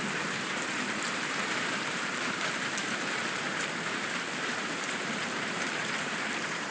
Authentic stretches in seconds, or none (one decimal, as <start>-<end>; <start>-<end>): 5.8-6.3